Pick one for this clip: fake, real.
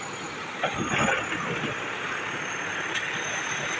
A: real